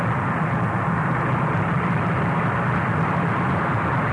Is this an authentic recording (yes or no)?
yes